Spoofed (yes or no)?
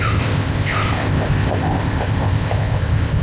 yes